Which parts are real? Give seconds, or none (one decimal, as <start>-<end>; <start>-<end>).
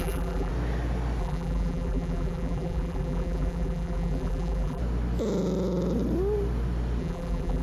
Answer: 0.5-1.2; 4.8-7.0